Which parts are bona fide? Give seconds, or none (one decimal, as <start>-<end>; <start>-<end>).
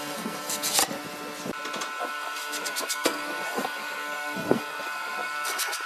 0.8-2.0